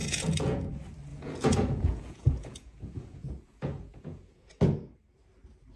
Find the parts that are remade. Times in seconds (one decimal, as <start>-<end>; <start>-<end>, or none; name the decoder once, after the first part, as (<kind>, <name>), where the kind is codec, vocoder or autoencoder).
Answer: 0.0-0.7 (vocoder, Vocos); 1.1-4.6